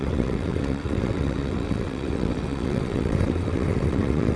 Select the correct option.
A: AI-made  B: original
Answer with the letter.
A